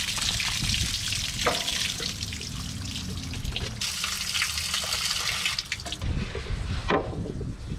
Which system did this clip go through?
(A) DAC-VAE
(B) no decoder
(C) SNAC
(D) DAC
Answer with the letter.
B